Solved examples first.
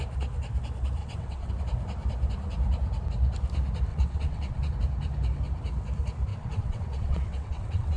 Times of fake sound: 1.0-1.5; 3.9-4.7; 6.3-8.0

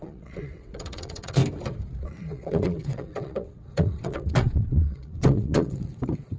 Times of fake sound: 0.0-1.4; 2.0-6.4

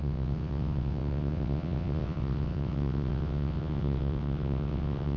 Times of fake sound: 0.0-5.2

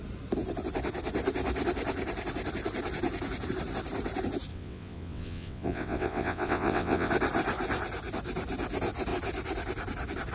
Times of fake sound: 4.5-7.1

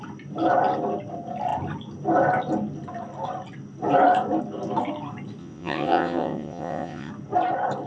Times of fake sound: 5.4-7.1

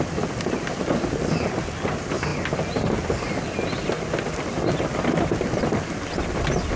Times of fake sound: none

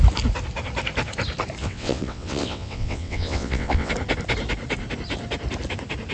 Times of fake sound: 1.6-3.9